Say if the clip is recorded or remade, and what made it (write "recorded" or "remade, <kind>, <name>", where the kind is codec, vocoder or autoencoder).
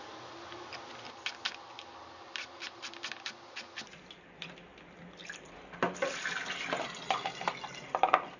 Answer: recorded